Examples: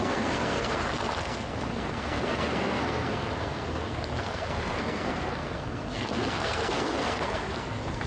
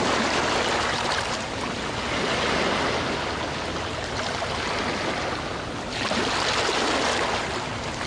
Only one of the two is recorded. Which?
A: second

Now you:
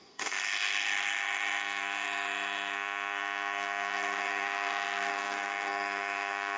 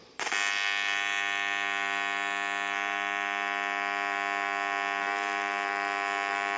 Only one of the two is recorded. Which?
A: second